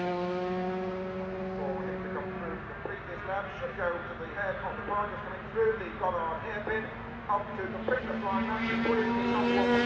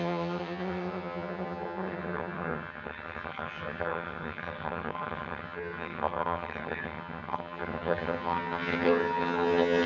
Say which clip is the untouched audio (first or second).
first